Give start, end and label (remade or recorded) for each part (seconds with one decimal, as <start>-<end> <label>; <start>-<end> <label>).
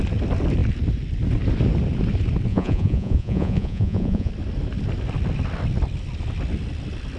0.0-2.5 recorded; 2.5-4.3 remade; 4.3-7.2 recorded